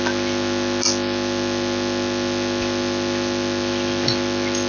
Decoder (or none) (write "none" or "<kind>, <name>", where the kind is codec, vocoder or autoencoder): none